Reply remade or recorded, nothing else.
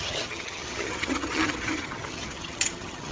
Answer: remade